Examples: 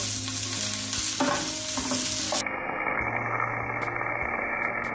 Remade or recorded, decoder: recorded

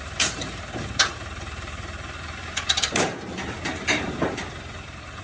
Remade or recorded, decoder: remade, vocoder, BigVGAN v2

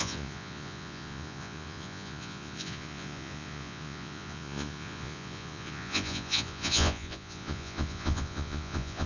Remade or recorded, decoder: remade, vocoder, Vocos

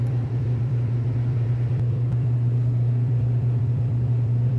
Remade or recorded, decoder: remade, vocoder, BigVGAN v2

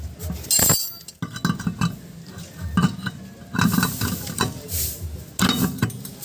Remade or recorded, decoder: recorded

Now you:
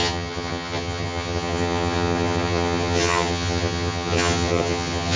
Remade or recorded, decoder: remade, vocoder, HiFi-GAN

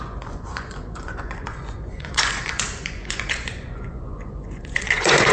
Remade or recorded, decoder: remade, vocoder, Vocos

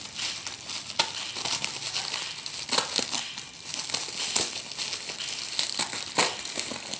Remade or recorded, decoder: recorded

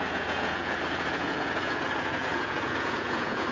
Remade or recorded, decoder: remade, vocoder, Vocos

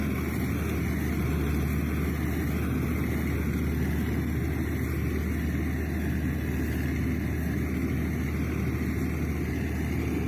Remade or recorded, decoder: recorded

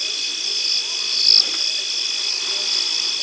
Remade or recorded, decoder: recorded